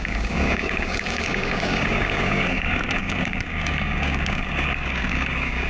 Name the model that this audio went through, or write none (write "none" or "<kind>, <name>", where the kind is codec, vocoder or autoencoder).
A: codec, DAC